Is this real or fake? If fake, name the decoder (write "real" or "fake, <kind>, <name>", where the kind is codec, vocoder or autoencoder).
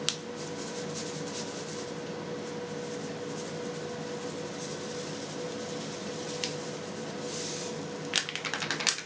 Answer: real